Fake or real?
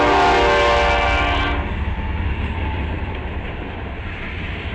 real